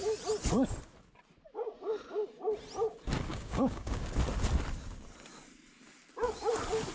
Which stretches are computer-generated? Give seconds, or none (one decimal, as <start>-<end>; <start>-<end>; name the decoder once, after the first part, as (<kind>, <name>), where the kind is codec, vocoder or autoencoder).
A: 3.3-4.1 (codec, DAC)